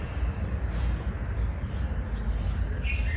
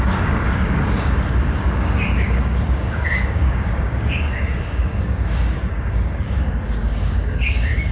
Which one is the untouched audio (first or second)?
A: first